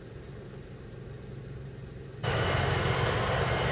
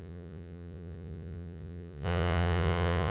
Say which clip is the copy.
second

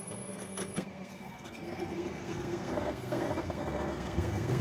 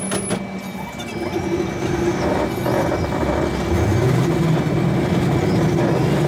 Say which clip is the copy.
first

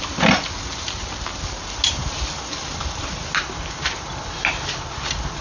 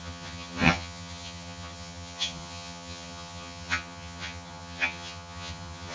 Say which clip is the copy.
second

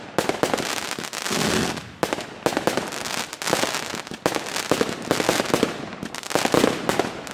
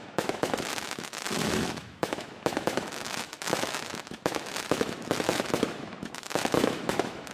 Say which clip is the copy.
second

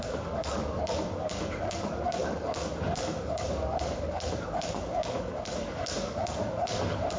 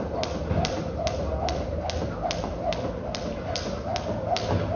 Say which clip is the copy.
first